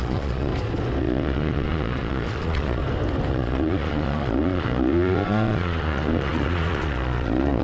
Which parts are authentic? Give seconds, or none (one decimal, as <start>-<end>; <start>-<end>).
0.5-1.0; 2.8-3.3